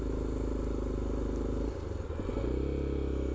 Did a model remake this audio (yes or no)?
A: no